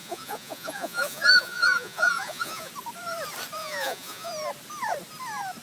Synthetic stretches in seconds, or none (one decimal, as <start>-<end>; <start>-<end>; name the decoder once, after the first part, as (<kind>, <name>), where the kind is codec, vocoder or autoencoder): 0.0-2.7 (vocoder, Vocos); 3.6-4.3